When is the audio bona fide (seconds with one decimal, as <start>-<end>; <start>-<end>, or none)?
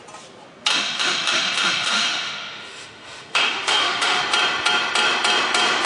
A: 0.0-0.7; 4.2-5.9